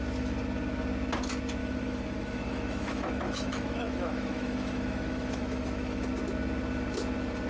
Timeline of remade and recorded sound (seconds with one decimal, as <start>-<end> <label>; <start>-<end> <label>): 0.0-1.6 recorded; 1.6-6.1 remade; 6.1-7.5 recorded